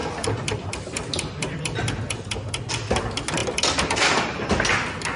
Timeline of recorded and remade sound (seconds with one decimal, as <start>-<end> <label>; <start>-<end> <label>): 0.0-2.7 remade; 2.7-3.4 recorded; 3.4-4.5 remade; 4.5-5.2 recorded